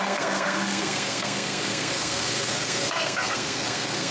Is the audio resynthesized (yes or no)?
yes